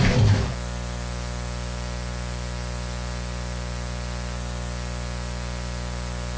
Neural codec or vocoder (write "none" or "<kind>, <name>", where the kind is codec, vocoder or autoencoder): none